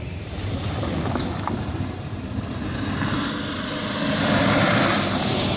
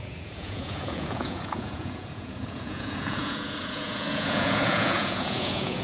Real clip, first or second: first